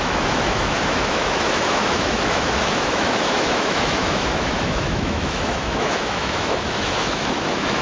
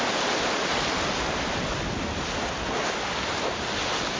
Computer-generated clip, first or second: first